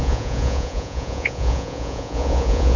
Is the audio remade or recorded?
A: remade